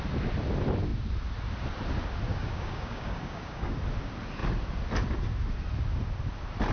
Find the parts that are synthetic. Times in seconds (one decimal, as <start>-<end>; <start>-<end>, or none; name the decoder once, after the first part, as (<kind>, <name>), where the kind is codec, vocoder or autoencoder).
2.3-3.8 (codec, DAC)

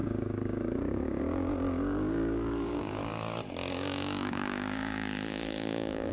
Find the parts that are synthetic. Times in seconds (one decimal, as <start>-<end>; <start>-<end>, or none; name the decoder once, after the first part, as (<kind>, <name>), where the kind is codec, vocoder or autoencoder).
0.0-3.0 (codec, DAC); 3.7-6.1

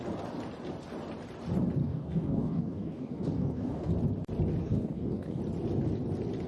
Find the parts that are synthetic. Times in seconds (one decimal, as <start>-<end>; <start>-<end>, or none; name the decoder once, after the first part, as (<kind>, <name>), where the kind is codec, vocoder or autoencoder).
1.8-3.9 (codec, DAC); 4.6-5.4

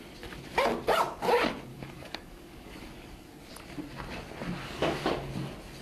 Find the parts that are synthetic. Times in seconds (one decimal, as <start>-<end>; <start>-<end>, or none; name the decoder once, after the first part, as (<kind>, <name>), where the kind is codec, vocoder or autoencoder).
1.7-3.5 (codec, DAC); 4.6-5.3

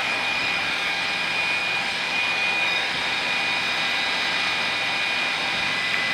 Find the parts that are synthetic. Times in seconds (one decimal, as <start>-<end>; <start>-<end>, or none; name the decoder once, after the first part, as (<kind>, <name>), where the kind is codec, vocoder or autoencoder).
0.0-1.1 (codec, DAC); 1.6-3.0

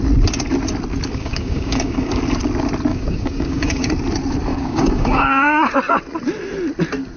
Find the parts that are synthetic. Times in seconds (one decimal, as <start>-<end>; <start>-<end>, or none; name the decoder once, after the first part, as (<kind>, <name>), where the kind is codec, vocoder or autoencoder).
1.1-2.2 (codec, DAC); 2.9-3.9; 4.5-5.7

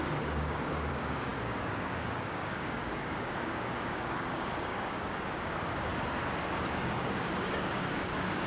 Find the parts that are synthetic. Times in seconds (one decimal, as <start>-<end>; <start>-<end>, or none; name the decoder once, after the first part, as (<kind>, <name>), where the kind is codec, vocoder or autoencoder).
0.0-5.9 (codec, DAC); 6.8-8.5

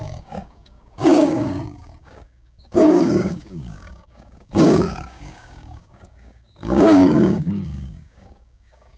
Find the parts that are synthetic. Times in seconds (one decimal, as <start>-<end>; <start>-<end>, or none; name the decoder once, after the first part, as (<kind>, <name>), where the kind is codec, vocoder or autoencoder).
0.0-9.0 (codec, DAC)